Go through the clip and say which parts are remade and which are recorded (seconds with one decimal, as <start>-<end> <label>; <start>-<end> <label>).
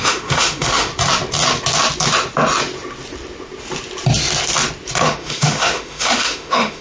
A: 0.0-0.9 remade; 0.9-5.0 recorded; 5.0-6.8 remade